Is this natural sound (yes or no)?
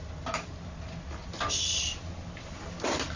yes